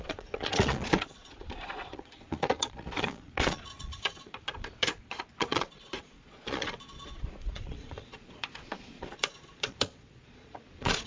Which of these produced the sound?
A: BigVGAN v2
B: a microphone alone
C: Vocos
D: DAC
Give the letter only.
C